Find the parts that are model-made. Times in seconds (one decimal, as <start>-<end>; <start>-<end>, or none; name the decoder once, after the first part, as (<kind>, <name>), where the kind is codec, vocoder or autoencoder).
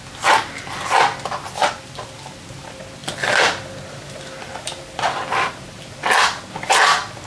none